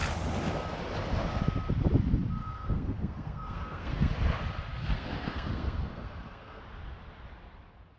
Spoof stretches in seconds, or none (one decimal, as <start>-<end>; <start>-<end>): 2.4-4.1; 4.8-6.6